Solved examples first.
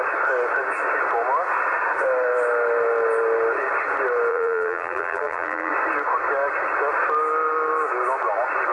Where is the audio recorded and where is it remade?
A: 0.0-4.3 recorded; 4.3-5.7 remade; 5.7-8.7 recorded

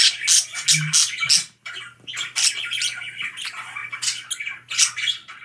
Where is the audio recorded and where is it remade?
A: 0.0-5.4 recorded

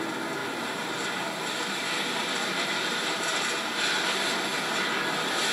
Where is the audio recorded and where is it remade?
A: 0.0-0.4 recorded; 0.4-3.7 remade; 3.7-5.5 recorded

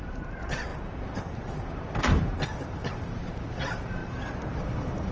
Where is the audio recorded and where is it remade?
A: 0.0-4.0 remade; 4.0-4.6 recorded; 4.6-5.1 remade

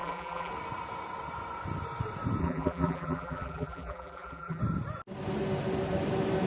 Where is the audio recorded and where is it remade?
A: 0.0-0.5 remade; 0.5-2.4 recorded; 2.4-4.6 remade; 4.6-6.5 recorded

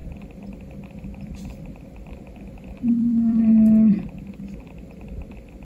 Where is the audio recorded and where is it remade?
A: 0.0-3.4 remade; 3.4-5.6 recorded

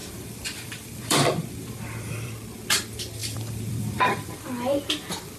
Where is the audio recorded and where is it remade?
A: 0.0-2.3 remade; 2.3-3.2 recorded; 3.2-4.5 remade; 4.5-5.4 recorded

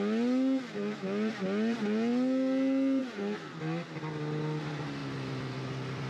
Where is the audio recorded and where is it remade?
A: 0.0-6.1 recorded